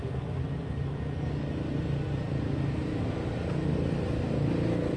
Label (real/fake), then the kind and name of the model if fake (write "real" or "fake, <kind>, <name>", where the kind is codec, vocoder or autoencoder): real